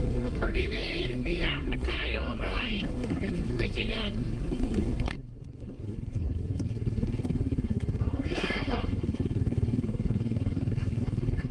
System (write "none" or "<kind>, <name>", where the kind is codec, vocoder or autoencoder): codec, SNAC